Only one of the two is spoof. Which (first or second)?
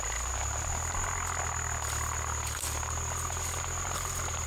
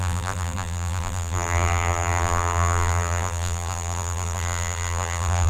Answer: second